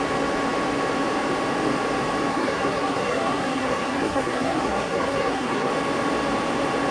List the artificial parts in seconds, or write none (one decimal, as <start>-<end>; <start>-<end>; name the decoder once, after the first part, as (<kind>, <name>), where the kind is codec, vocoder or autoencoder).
2.3-5.7 (codec, SNAC)